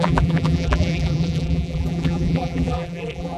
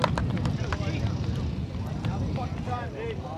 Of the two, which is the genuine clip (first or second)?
second